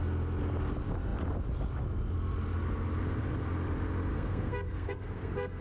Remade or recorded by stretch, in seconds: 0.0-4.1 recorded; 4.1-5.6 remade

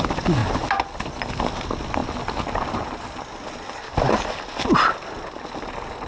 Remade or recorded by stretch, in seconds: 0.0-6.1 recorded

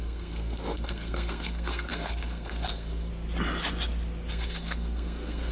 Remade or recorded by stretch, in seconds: 0.0-3.1 remade; 3.1-4.3 recorded; 4.3-5.5 remade

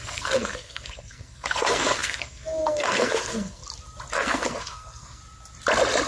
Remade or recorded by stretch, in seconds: 0.0-3.6 remade; 3.6-4.1 recorded; 4.1-5.2 remade; 5.2-6.1 recorded